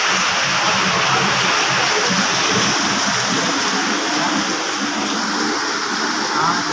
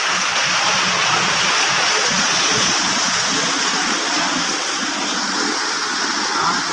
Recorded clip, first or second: first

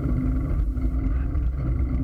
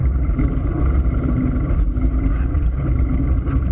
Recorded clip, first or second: first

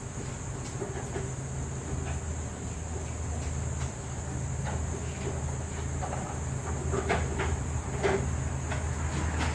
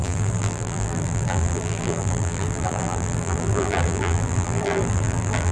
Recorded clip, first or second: first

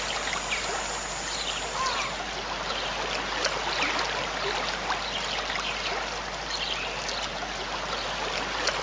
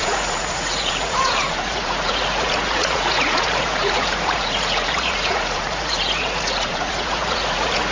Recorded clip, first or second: first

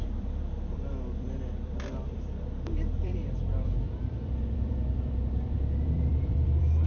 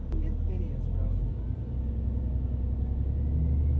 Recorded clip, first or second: second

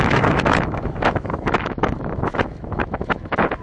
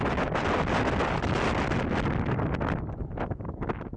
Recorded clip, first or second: second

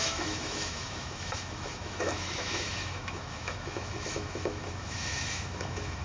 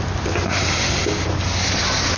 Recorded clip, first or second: second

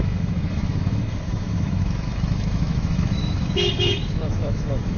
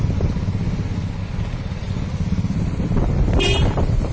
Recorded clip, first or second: second